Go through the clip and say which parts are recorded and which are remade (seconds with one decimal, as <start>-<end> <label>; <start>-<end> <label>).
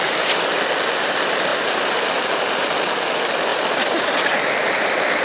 0.0-1.5 remade; 1.5-2.6 recorded; 2.6-5.2 remade